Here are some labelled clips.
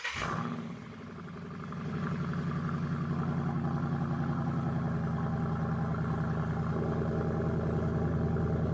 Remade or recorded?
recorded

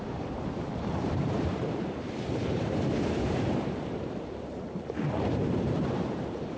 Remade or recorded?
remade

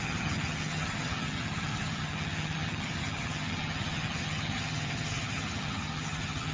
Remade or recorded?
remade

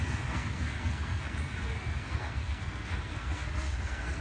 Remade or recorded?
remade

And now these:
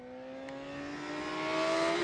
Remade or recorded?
recorded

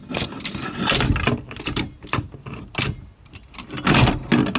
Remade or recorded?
recorded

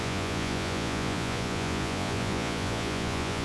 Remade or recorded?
remade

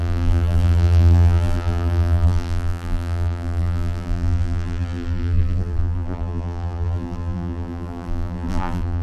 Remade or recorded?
remade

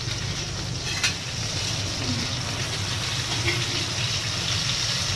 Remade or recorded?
recorded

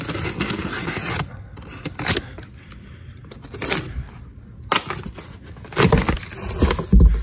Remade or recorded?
recorded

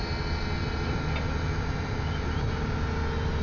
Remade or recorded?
recorded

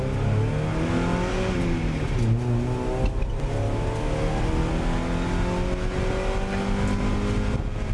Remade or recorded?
recorded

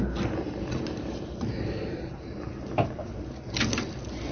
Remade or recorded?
recorded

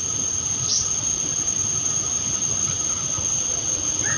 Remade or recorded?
recorded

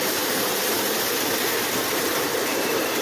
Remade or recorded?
remade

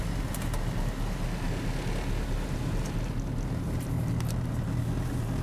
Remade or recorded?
recorded